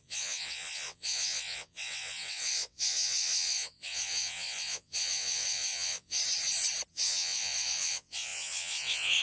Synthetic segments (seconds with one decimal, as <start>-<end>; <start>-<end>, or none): 0.0-6.2; 6.9-9.2